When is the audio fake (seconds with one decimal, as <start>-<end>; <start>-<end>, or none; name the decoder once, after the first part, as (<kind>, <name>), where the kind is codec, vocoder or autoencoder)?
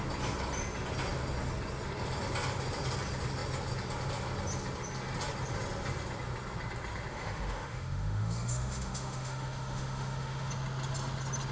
7.1-10.5 (autoencoder, DAC-VAE)